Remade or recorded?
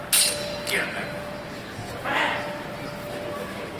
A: recorded